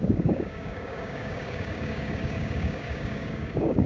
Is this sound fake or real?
fake